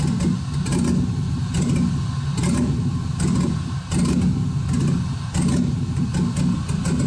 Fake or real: real